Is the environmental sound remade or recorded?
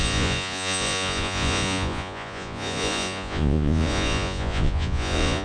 remade